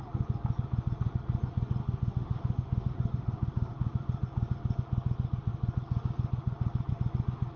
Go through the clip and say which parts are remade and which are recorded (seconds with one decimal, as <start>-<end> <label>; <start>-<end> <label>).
0.0-1.8 recorded; 1.8-3.7 remade; 3.7-7.6 recorded